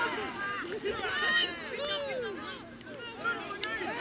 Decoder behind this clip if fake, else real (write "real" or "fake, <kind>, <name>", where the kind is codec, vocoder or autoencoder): real